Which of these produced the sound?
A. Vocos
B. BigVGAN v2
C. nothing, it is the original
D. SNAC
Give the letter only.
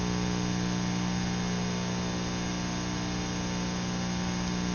C